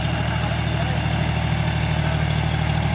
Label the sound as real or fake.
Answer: real